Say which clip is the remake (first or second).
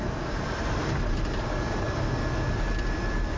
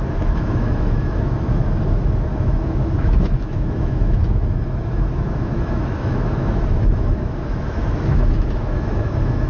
second